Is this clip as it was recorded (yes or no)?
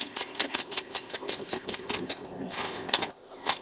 no